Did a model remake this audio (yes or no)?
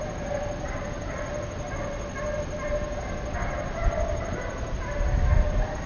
no